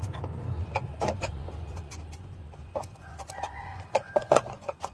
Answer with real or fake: fake